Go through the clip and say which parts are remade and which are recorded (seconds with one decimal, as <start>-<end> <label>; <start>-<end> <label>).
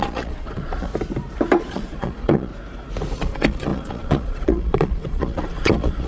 0.0-0.9 remade; 0.9-1.6 recorded; 1.6-2.5 remade; 2.5-3.1 recorded; 3.1-6.1 remade